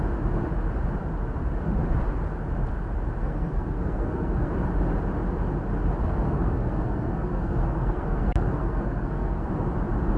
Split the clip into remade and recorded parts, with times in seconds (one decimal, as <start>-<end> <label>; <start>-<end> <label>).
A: 0.0-3.2 recorded; 3.2-4.5 remade; 4.5-6.0 recorded; 6.0-9.5 remade; 9.5-10.2 recorded